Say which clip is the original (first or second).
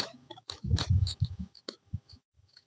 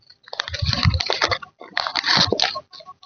second